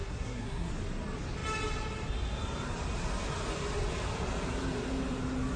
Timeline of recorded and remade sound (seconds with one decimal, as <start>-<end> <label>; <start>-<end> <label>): 0.0-0.7 remade; 0.7-5.6 recorded